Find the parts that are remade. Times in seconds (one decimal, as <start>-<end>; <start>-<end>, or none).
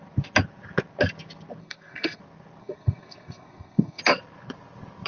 1.6-2.2; 2.6-4.0